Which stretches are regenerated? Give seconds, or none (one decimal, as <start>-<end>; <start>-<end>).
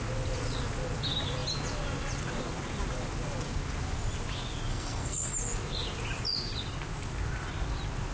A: 4.7-5.3